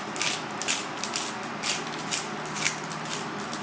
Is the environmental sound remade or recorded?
recorded